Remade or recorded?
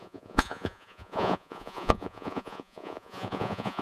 remade